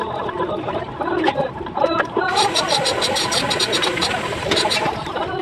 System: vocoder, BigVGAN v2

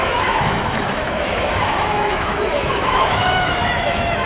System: autoencoder, DAC-VAE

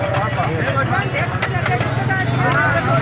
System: none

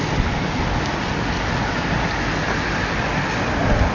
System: none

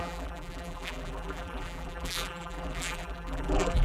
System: vocoder, BigVGAN v2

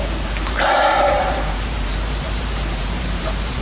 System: vocoder, BigVGAN v2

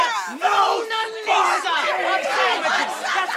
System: vocoder, BigVGAN v2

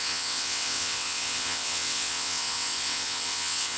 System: vocoder, WaveNeXt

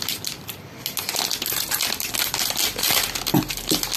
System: none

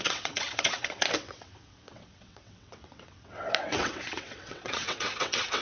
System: vocoder, WaveNeXt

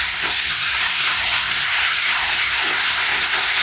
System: codec, SNAC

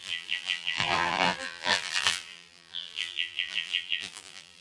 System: vocoder, BigVGAN v2